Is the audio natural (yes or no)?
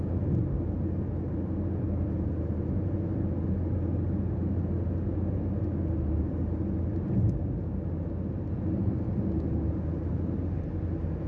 yes